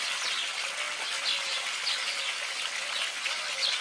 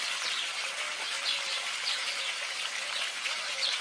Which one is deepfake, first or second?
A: second